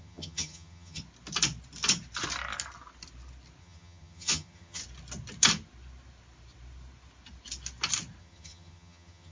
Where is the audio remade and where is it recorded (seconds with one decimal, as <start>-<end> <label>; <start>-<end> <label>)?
0.0-1.0 remade; 1.0-3.6 recorded; 3.6-4.8 remade; 4.8-8.2 recorded; 8.2-9.3 remade